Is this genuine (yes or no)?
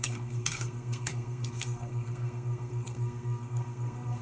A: no